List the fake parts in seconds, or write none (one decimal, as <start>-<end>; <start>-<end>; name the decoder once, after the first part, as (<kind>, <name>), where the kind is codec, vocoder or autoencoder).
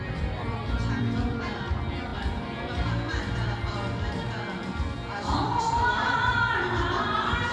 0.0-7.5 (vocoder, BigVGAN v2)